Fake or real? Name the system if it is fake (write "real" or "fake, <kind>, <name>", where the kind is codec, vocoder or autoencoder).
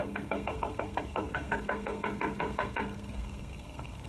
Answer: fake, codec, SNAC